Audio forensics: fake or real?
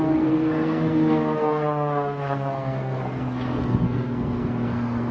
fake